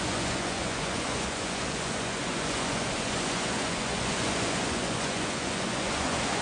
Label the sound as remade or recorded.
remade